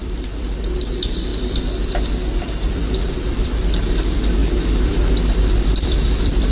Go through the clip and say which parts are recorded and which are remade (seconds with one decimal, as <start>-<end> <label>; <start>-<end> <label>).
0.0-1.3 remade; 1.3-2.4 recorded; 2.4-6.5 remade